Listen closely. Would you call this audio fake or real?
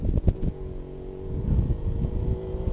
fake